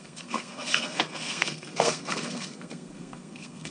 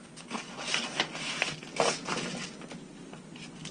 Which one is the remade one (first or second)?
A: first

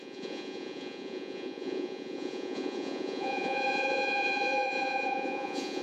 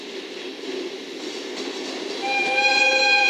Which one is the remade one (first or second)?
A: first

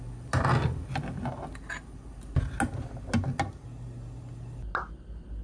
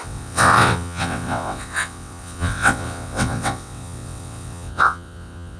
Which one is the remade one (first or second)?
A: second